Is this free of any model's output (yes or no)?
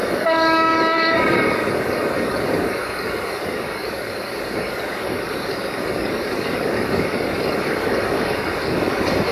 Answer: no